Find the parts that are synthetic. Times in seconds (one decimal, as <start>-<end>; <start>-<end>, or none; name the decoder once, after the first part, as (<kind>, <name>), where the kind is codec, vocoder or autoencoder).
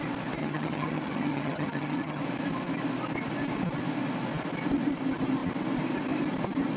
0.4-2.2 (vocoder, HiFi-GAN)